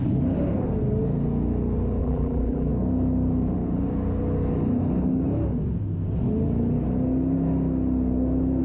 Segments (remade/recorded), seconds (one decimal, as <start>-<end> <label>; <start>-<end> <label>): 0.0-2.0 recorded; 2.0-2.7 remade; 2.7-8.6 recorded